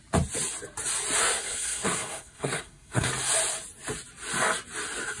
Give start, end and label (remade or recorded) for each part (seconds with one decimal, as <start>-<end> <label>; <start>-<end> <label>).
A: 0.0-1.2 recorded; 1.2-3.1 remade; 3.1-5.2 recorded